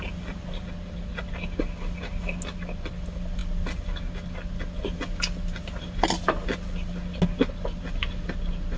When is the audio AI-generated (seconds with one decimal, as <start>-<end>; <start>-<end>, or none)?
none